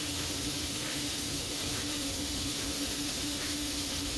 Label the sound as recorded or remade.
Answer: remade